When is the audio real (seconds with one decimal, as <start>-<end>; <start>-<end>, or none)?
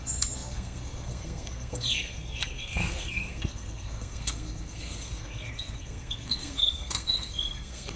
none